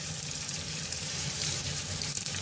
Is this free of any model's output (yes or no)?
no